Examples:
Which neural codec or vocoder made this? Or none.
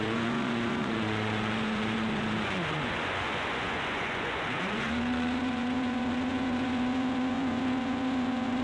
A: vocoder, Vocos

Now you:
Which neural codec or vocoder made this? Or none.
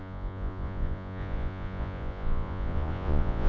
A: vocoder, Vocos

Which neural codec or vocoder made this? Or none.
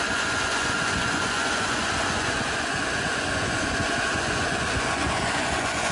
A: vocoder, Vocos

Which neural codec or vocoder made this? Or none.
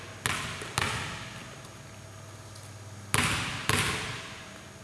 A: none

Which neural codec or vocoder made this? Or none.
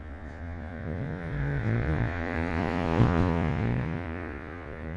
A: vocoder, Vocos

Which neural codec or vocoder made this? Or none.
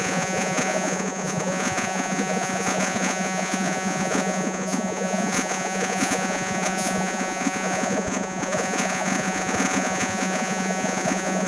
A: vocoder, Vocos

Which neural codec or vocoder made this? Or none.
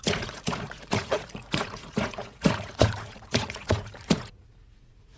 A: vocoder, Vocos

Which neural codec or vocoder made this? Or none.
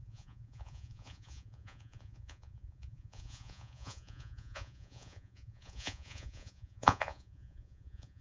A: vocoder, Vocos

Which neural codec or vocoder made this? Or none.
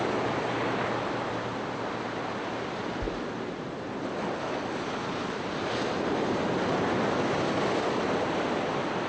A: none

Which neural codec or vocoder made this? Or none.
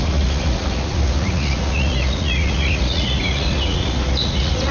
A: vocoder, Vocos